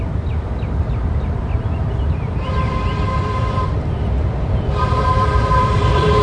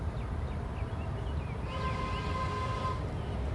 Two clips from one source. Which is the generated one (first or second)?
first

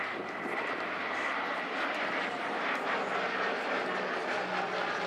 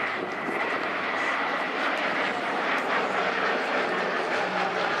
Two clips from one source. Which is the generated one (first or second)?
second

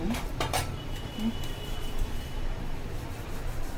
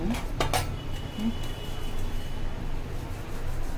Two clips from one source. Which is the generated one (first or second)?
first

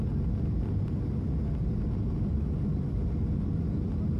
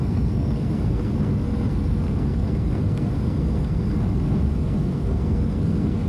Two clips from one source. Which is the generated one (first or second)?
second